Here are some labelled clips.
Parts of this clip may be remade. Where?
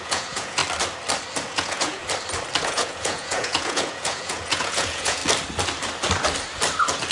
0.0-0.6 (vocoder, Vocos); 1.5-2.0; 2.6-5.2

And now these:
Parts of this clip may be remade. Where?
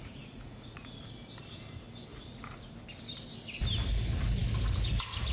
0.0-1.0 (vocoder, Vocos); 2.1-2.7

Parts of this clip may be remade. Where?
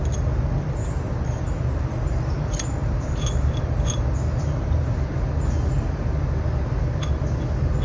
none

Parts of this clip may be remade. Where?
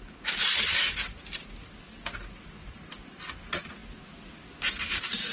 none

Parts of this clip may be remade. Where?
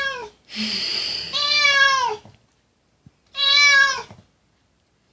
none